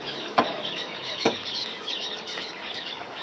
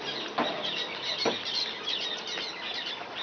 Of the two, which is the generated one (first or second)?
first